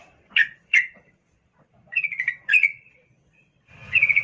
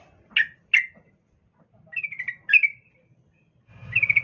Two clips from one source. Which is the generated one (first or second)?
first